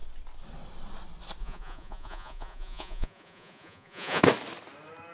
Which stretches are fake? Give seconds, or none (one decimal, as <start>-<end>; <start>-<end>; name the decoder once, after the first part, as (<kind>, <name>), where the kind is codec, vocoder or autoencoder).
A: 1.4-4.2 (vocoder, Vocos)